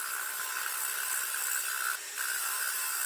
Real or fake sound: fake